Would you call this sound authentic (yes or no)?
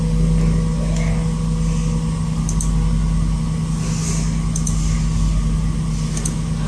yes